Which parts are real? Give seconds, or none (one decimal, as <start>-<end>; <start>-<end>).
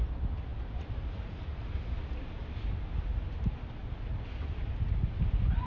0.0-0.5; 2.8-3.8; 4.6-5.7